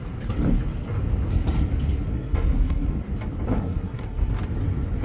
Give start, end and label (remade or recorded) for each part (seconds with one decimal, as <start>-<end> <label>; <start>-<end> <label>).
0.0-2.1 recorded; 2.1-3.0 remade; 3.0-3.5 recorded; 3.5-4.3 remade; 4.3-5.0 recorded